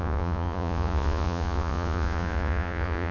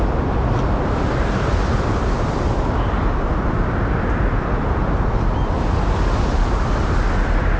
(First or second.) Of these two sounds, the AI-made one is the first